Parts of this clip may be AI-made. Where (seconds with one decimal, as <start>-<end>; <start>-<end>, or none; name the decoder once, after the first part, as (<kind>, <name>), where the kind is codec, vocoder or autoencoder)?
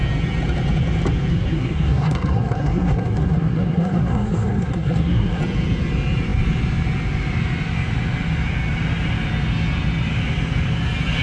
1.3-5.4 (codec, SNAC)